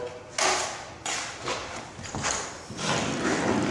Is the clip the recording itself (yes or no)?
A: yes